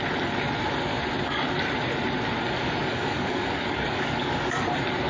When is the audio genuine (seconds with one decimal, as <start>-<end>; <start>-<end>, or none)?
0.0-2.9; 4.6-5.1